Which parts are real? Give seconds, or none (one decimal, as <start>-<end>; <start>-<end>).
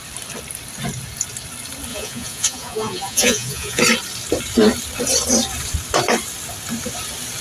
0.0-1.9; 3.8-7.4